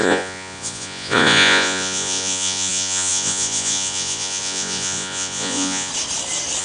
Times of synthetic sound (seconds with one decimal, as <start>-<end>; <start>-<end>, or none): 0.0-5.9